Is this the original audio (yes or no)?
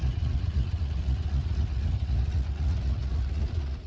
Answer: no